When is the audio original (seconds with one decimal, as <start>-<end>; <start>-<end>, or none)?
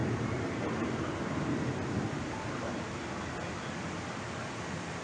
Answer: 3.0-5.0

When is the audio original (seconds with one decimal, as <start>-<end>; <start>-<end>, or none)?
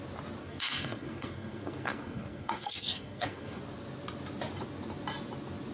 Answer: 0.0-0.4; 3.6-5.7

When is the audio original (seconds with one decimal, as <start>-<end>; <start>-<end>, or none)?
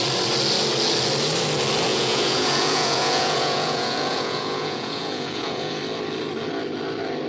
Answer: 0.0-1.9; 5.8-7.3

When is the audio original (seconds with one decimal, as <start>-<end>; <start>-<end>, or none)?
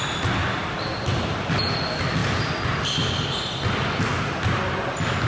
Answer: 0.0-5.3